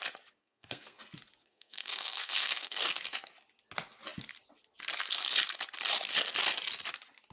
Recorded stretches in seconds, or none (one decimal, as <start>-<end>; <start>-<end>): 0.0-0.4; 1.0-1.4; 3.0-7.3